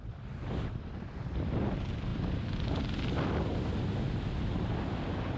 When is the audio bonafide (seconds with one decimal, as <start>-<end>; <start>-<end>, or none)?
0.0-5.4